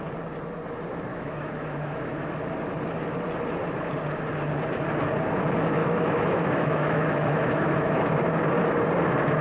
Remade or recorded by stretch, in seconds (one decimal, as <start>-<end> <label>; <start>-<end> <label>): 0.0-1.1 recorded; 1.1-2.4 remade; 2.4-5.8 recorded; 5.8-8.0 remade; 8.0-9.4 recorded